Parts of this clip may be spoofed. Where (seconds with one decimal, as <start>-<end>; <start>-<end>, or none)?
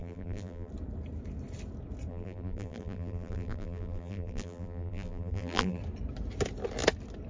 0.0-0.7; 2.1-5.8